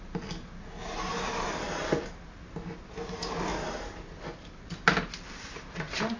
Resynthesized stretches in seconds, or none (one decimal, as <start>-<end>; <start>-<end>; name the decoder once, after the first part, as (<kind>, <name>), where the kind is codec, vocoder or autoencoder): none